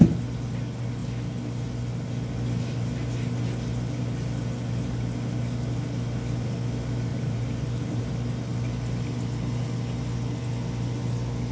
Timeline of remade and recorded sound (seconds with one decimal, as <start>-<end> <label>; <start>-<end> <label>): 0.0-7.1 recorded; 7.1-8.0 remade; 8.0-11.5 recorded